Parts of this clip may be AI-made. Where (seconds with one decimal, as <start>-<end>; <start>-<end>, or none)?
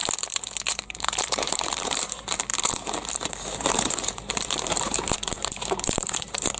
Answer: 0.7-6.6